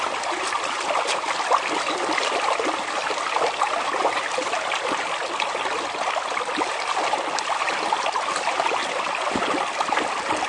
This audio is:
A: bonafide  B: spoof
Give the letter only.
A